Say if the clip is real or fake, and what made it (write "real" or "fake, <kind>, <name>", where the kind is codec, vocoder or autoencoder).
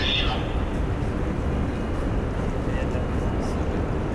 real